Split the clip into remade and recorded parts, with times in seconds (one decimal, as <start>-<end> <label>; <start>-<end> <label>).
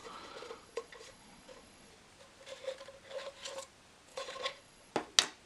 0.0-1.9 remade; 1.9-4.1 recorded; 4.1-4.9 remade; 4.9-5.5 recorded